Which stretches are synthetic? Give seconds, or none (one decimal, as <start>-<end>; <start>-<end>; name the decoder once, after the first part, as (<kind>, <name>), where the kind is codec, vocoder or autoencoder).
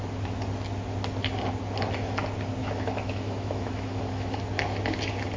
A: 2.6-4.4 (autoencoder, DAC-VAE)